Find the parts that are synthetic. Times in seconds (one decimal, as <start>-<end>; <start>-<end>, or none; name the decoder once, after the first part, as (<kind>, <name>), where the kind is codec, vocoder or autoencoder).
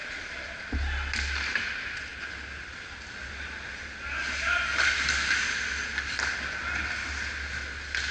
0.0-0.7 (vocoder, Vocos)